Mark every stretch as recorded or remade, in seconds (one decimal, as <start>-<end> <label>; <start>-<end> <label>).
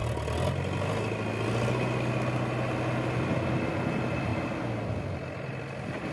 0.0-6.1 recorded